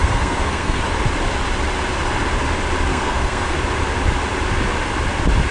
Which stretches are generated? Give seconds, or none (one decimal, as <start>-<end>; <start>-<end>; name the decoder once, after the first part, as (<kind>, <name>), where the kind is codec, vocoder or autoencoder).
0.0-0.8 (codec, SNAC); 2.9-3.6